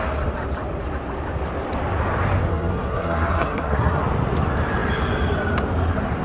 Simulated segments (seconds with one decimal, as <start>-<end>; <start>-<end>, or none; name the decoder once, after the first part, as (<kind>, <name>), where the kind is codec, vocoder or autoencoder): 2.5-4.0 (codec, SNAC)